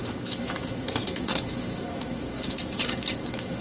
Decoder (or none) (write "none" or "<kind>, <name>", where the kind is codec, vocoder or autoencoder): autoencoder, DAC-VAE